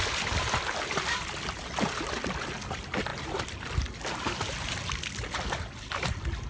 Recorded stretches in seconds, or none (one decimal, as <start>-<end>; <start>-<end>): 0.0-6.5